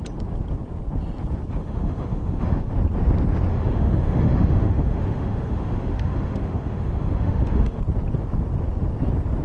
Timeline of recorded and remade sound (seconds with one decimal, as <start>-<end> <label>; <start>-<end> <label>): 0.0-1.6 recorded; 1.6-2.7 remade; 2.7-3.5 recorded; 3.5-7.8 remade; 7.8-9.4 recorded